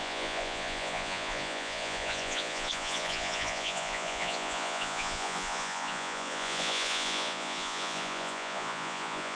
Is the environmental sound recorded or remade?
remade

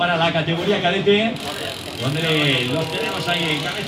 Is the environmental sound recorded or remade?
recorded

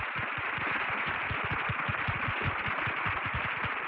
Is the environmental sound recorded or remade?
recorded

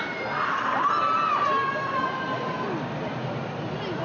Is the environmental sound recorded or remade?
recorded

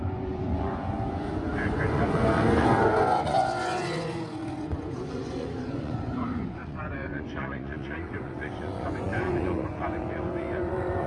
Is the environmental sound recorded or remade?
remade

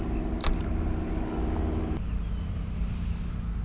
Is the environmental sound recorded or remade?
recorded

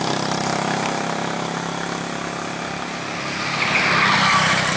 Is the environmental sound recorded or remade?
recorded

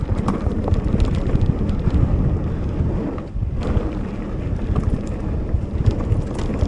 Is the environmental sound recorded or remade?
recorded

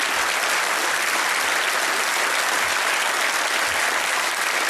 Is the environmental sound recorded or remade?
recorded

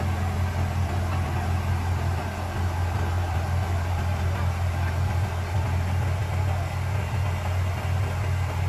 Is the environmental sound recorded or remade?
recorded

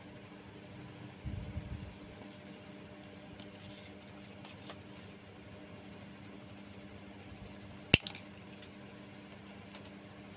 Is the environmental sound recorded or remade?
recorded